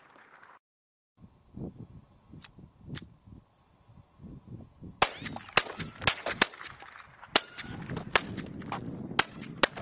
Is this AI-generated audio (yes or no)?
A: no